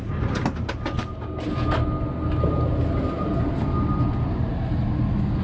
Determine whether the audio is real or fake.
real